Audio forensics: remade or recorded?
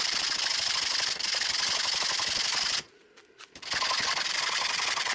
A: recorded